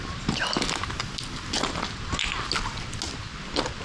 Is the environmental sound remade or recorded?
recorded